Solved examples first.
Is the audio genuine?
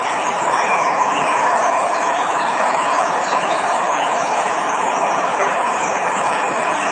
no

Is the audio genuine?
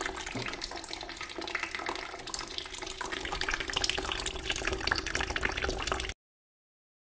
yes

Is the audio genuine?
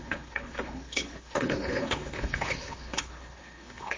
no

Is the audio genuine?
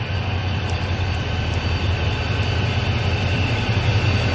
yes